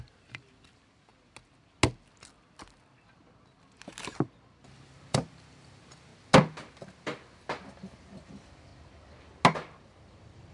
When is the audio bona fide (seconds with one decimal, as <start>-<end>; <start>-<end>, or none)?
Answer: 1.1-4.6; 6.1-8.0; 8.7-10.1